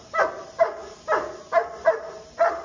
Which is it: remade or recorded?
recorded